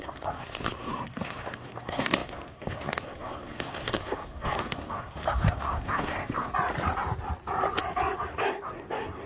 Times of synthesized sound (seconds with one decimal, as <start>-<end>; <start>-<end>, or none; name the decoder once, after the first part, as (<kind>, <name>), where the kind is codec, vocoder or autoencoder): 0.0-6.5 (codec, SNAC); 8.3-9.3